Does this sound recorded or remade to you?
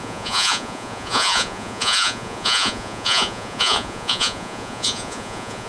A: remade